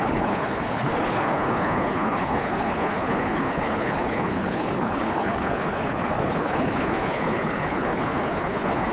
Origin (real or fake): fake